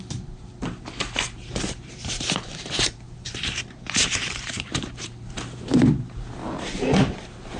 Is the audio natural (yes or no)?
no